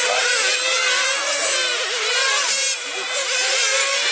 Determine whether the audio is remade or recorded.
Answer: recorded